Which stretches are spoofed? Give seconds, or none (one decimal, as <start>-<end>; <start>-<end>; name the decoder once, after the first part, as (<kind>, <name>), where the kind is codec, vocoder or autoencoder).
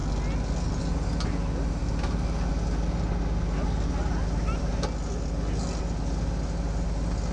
none